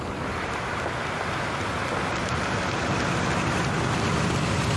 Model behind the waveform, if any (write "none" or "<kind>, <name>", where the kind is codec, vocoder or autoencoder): none